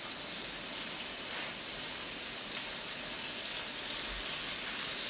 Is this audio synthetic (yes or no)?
no